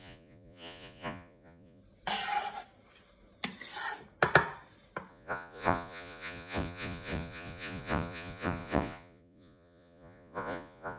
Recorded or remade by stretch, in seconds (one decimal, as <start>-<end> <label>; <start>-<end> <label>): 0.0-1.8 remade; 1.8-5.1 recorded; 5.1-11.0 remade